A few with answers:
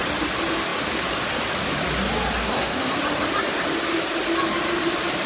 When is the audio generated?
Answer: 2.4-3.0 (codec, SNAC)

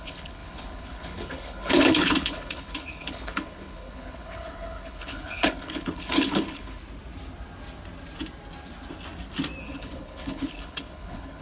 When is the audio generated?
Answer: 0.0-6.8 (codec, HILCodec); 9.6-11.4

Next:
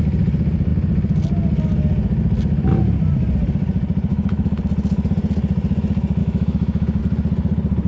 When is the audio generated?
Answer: 4.1-4.6 (autoencoder, DAC-VAE); 6.2-7.0

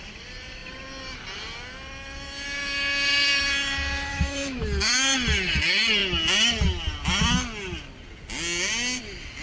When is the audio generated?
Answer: 4.1-4.6 (autoencoder, DAC-VAE)

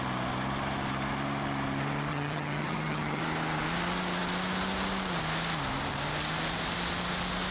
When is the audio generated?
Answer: 2.1-3.2 (vocoder, HiFi-GAN)

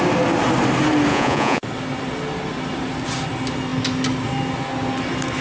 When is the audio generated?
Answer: 1.1-1.6 (vocoder, Vocos)